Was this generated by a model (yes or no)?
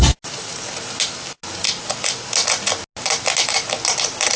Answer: no